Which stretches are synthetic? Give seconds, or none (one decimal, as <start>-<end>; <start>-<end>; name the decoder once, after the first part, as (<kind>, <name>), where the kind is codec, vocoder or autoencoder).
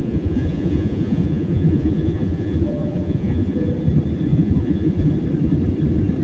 0.0-3.7 (vocoder, Vocos); 4.3-5.1